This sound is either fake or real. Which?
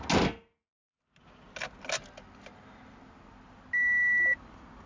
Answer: real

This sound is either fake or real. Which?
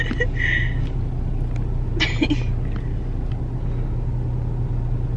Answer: real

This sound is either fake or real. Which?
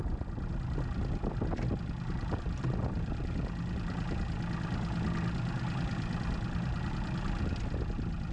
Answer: real